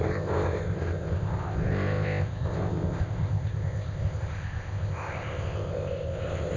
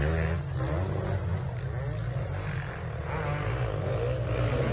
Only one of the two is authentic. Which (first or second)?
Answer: second